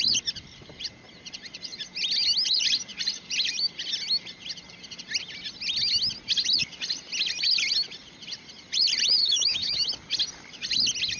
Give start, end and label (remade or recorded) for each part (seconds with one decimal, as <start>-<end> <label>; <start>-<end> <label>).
0.0-9.2 recorded; 9.2-9.9 remade; 9.9-11.2 recorded